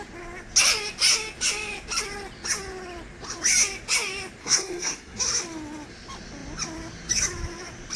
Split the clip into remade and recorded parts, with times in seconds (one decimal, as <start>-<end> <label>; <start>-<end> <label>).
0.0-4.4 recorded; 4.4-5.2 remade; 5.2-8.0 recorded